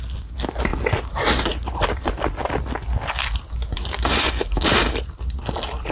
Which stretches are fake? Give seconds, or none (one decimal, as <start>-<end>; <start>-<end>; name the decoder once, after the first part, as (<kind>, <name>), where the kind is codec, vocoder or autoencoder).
none